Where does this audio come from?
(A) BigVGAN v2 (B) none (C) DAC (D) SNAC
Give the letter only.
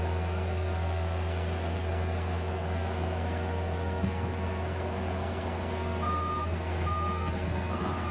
D